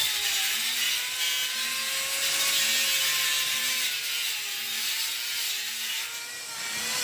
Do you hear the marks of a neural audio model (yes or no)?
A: no